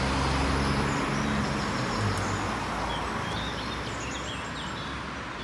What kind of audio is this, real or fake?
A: real